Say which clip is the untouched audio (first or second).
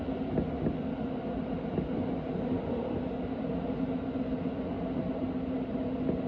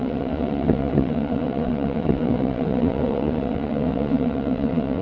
first